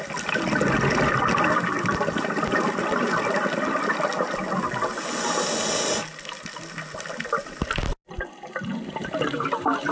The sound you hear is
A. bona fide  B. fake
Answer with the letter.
A